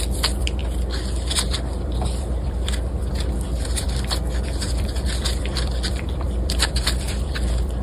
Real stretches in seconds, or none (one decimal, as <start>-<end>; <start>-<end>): 0.6-1.3

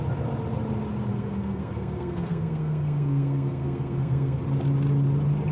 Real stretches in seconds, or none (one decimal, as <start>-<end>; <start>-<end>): 0.0-1.1; 4.4-5.5